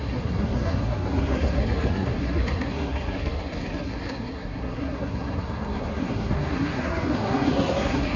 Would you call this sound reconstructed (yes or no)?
yes